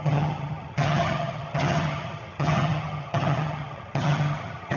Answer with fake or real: fake